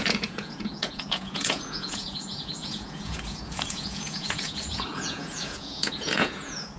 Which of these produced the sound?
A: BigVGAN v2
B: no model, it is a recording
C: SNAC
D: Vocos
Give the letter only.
D